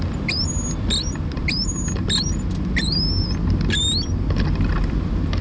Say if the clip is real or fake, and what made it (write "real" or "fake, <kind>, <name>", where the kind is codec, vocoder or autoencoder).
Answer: real